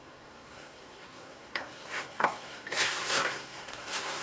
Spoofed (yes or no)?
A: yes